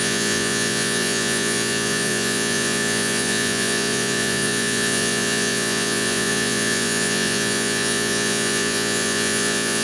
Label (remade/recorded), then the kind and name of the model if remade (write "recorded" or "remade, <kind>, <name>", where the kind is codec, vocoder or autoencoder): remade, vocoder, Vocos